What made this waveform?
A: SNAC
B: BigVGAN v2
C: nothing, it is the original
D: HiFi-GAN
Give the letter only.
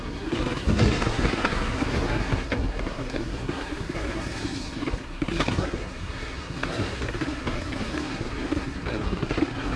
A